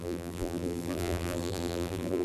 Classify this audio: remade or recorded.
remade